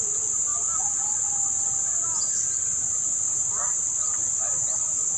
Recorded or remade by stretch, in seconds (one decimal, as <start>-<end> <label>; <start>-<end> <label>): 0.0-5.2 recorded